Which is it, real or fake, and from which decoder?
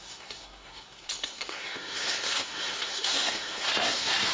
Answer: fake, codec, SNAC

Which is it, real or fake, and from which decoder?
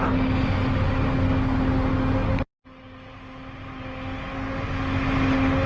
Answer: real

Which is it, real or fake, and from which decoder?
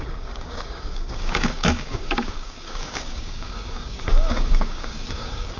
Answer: fake, codec, DAC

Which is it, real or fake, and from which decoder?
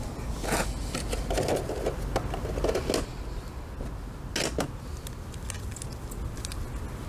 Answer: real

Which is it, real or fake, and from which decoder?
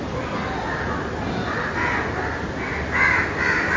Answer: real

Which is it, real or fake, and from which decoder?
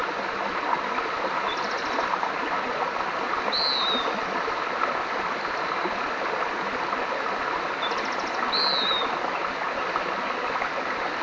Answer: real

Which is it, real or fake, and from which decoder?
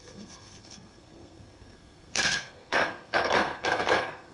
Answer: fake, codec, SNAC